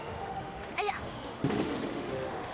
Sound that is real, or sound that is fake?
fake